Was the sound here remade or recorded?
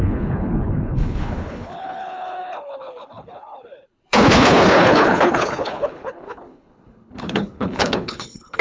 remade